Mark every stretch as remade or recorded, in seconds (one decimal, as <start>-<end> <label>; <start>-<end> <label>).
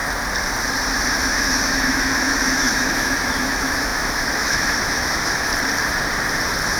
0.0-1.2 recorded; 1.2-5.5 remade; 5.5-6.8 recorded